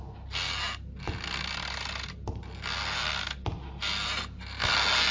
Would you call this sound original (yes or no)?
yes